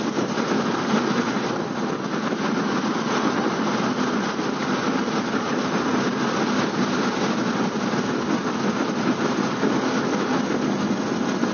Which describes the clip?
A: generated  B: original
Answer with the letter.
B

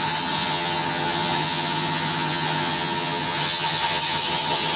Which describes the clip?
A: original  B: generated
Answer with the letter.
B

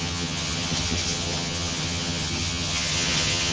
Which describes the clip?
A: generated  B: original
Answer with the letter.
A